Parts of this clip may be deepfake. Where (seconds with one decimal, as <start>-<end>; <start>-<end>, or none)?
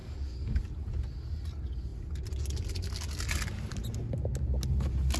0.0-0.6